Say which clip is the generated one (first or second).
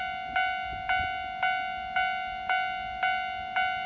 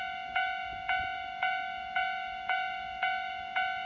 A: second